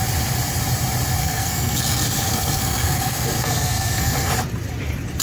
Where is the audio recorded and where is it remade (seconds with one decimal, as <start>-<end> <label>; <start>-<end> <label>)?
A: 0.0-1.2 recorded; 1.2-4.3 remade; 4.3-5.2 recorded